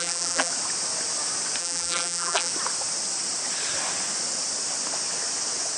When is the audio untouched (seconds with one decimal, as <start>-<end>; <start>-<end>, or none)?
0.5-1.6; 2.5-5.8